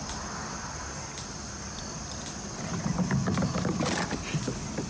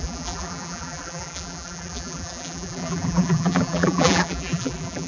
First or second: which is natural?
first